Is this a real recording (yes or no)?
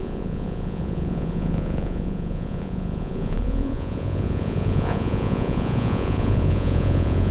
no